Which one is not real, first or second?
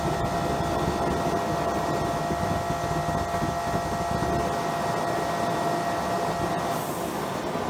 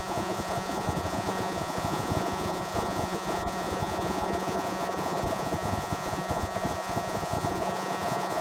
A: second